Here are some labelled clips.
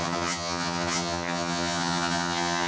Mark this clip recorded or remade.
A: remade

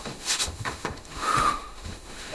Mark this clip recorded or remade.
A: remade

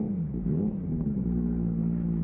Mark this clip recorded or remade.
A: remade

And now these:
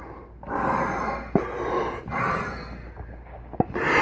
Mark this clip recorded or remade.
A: recorded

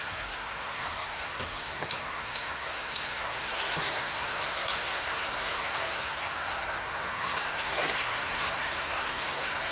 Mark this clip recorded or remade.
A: remade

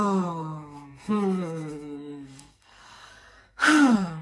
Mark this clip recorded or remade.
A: remade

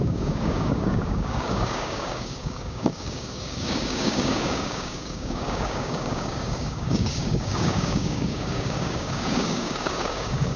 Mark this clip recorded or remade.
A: remade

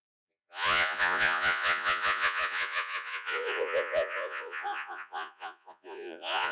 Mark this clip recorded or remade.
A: remade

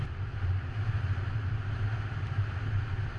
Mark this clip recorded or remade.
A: recorded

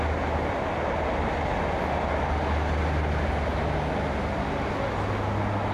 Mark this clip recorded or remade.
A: recorded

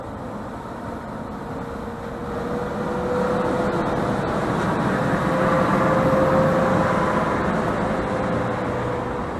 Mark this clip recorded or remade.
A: recorded